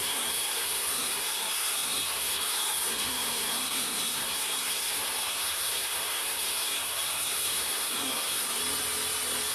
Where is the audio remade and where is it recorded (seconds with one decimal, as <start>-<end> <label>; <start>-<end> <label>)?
0.0-8.6 remade; 8.6-9.5 recorded